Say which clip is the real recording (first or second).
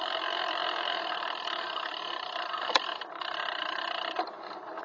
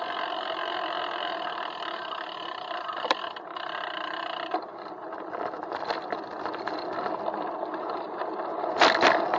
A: second